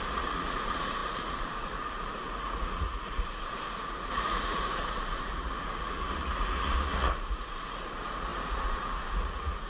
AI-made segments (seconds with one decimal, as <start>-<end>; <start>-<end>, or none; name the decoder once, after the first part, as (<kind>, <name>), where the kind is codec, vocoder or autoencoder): 0.0-9.7 (vocoder, Vocos)

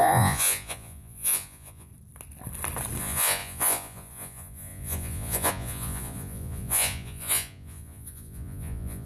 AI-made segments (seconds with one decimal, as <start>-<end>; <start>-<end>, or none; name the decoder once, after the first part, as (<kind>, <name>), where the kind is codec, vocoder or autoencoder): 0.0-1.9 (vocoder, Vocos); 3.0-9.1

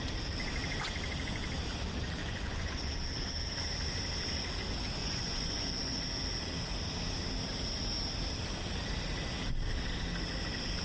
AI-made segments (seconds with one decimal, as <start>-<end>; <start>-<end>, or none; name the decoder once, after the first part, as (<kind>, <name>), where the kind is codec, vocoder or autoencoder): 2.2-2.9 (vocoder, Vocos); 5.0-6.0

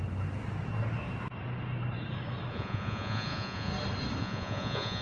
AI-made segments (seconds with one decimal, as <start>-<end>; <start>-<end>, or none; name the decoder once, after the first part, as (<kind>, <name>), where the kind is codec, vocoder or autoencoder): 2.5-3.7 (vocoder, Vocos); 4.2-5.0

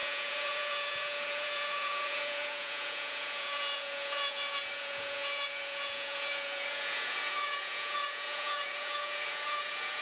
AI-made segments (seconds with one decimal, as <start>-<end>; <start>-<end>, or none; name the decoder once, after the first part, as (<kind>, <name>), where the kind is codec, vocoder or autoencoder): 0.0-10.0 (vocoder, Vocos)